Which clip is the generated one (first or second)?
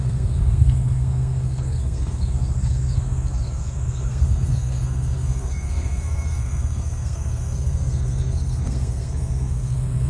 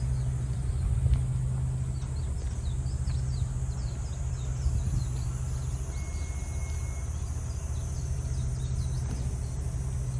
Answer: first